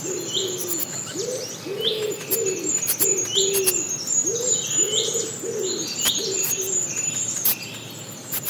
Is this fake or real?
real